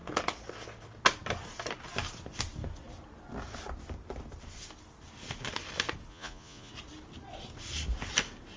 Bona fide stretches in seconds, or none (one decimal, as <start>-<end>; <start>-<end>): 0.0-6.1; 6.7-8.6